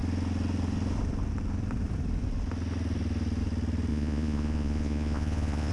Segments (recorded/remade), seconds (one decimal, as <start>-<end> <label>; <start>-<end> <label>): 0.0-3.9 recorded; 3.9-5.7 remade